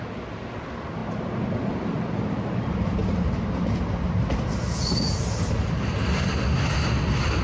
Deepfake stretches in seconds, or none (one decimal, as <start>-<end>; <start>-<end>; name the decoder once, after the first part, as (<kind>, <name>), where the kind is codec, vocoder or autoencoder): none